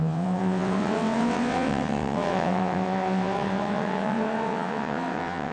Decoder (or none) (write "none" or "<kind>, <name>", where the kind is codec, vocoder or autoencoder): vocoder, WaveNeXt